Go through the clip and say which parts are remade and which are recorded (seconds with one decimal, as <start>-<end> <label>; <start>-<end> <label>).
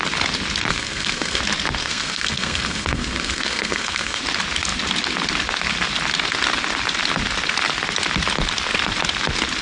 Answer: 0.0-0.7 recorded; 0.7-1.4 remade; 1.4-1.8 recorded; 1.8-4.2 remade; 4.2-9.6 recorded